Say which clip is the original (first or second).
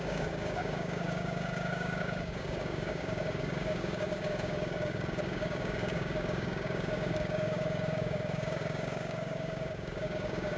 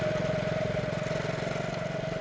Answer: second